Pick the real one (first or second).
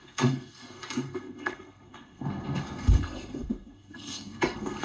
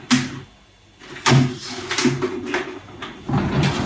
second